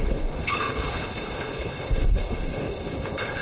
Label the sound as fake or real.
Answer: fake